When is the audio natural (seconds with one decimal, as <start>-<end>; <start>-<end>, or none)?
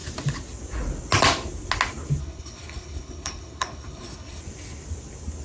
0.0-2.2; 4.4-5.4